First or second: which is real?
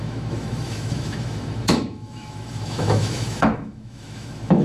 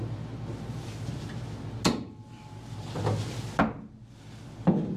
second